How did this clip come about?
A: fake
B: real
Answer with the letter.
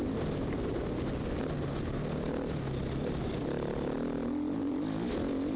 B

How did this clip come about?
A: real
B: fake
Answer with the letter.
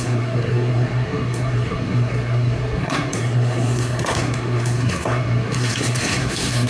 B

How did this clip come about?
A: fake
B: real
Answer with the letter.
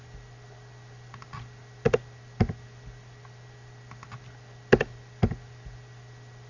B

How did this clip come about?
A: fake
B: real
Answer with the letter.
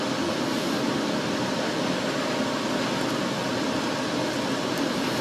B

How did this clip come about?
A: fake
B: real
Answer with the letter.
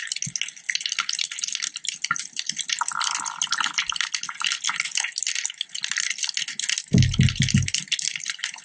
B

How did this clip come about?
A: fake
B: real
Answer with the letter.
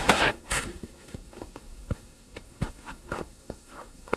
A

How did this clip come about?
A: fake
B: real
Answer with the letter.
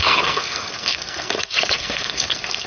A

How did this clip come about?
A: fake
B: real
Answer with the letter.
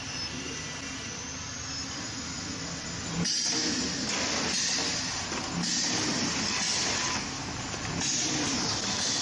B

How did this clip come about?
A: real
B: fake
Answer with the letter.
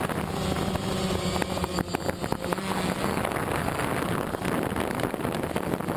A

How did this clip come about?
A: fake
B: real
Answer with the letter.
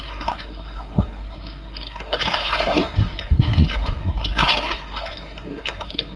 A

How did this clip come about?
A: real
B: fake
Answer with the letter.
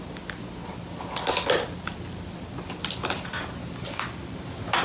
A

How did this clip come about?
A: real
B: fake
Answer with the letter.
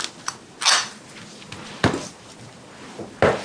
A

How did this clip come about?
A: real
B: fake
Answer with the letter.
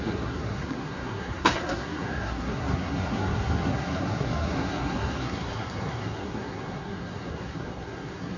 B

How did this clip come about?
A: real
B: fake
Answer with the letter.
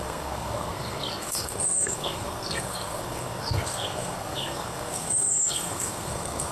B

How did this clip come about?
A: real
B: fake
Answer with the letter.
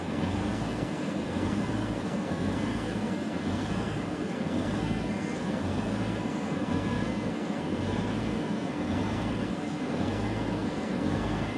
B